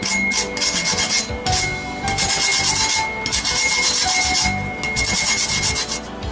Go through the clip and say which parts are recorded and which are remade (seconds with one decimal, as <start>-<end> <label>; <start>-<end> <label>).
0.0-6.3 recorded